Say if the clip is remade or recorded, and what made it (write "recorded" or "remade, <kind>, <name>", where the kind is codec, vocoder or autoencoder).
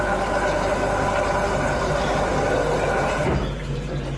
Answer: recorded